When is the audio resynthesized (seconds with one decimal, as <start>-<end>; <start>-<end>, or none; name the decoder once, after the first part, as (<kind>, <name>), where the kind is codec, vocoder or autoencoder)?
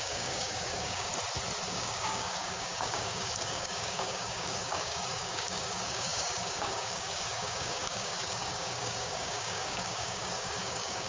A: 0.0-1.1 (codec, DAC); 1.7-11.1